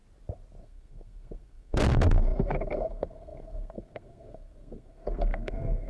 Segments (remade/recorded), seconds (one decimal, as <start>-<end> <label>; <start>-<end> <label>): 0.0-0.6 recorded; 0.6-5.9 remade